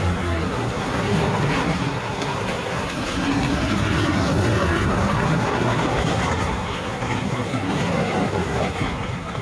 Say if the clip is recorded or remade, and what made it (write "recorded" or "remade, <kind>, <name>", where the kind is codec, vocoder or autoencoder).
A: remade, codec, SNAC